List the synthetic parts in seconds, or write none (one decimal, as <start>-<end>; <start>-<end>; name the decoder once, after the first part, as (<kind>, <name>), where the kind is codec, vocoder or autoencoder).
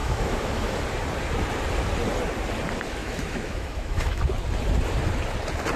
0.0-0.8 (autoencoder, DAC-VAE); 3.0-4.2